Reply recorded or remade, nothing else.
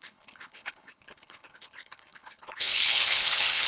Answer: remade